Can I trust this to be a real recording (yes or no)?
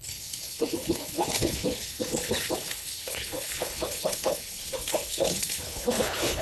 no